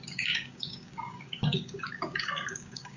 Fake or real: fake